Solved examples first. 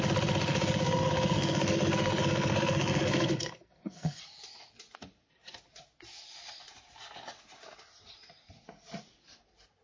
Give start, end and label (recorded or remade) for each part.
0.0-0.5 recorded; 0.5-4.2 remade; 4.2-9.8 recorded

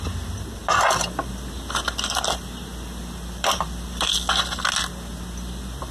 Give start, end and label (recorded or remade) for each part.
0.0-0.6 recorded; 0.6-4.1 remade; 4.1-5.9 recorded